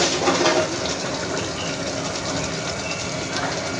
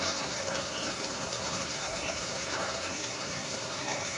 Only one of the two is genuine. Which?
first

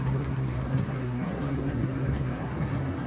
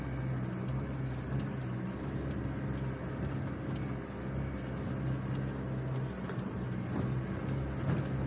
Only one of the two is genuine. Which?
second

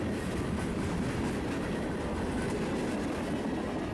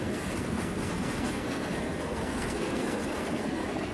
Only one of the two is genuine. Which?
first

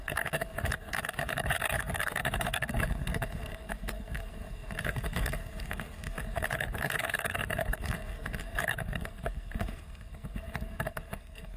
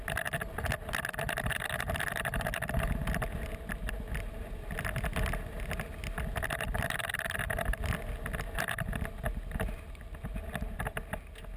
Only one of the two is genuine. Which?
second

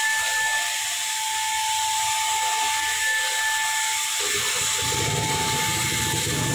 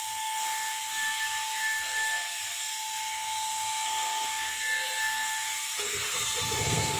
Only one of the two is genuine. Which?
first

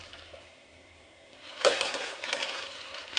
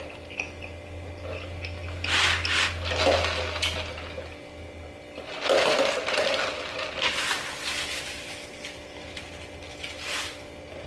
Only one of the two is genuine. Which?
second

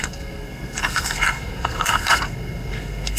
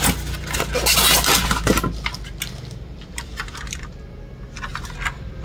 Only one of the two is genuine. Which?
second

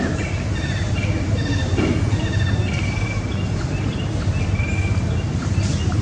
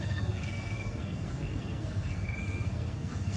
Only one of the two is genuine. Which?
first